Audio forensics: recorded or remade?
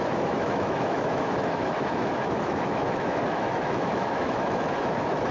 remade